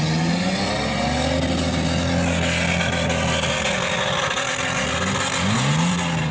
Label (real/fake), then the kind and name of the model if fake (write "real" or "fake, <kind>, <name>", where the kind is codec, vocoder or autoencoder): real